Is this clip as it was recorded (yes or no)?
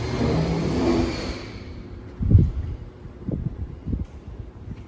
no